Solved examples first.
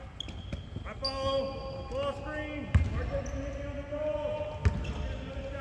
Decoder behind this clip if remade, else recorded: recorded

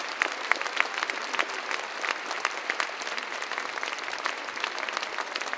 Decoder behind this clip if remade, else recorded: recorded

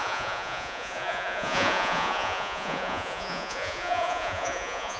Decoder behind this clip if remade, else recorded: remade, vocoder, Vocos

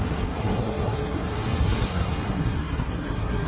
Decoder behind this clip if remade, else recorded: remade, codec, SNAC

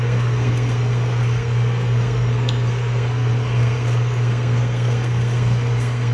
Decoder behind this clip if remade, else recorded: remade, codec, SNAC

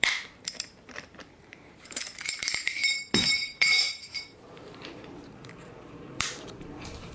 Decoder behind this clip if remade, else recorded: remade, vocoder, BigVGAN v2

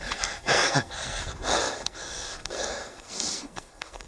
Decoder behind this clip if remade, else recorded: remade, codec, SNAC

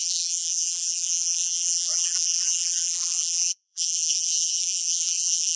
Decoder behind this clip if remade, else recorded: remade, vocoder, BigVGAN v2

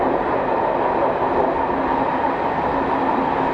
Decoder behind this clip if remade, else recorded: recorded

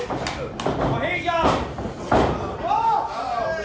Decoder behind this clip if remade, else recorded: recorded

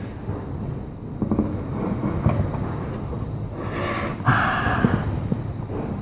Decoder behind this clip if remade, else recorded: recorded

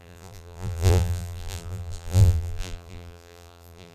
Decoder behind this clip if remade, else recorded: remade, vocoder, BigVGAN v2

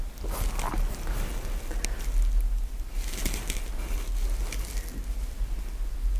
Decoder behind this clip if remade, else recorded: recorded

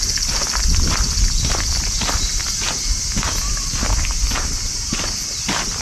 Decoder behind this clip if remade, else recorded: recorded